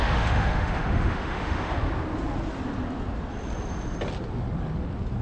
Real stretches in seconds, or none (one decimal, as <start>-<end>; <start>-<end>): 1.9-5.2